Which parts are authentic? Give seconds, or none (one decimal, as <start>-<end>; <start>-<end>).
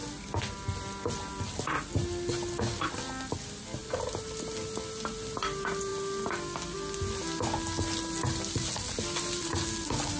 0.0-10.2